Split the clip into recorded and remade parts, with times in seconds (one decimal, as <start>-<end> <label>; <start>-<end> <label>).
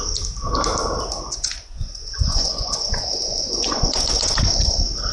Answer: 0.0-1.3 recorded; 1.3-4.4 remade; 4.4-5.1 recorded